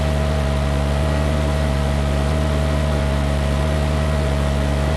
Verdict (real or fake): real